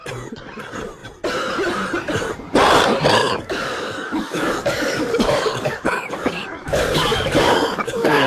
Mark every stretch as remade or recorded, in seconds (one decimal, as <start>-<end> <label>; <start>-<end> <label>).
0.0-3.2 recorded; 3.2-8.3 remade